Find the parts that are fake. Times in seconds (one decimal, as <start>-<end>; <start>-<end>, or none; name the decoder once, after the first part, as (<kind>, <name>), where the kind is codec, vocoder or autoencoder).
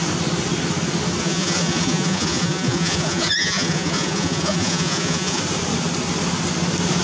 1.2-5.4 (vocoder, Vocos)